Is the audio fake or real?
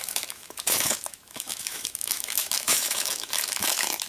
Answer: fake